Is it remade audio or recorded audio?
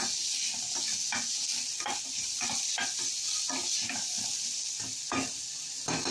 recorded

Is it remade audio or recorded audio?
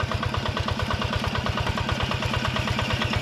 recorded